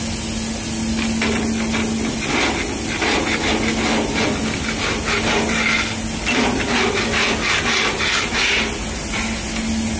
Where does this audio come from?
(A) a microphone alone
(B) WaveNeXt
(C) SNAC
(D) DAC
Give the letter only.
A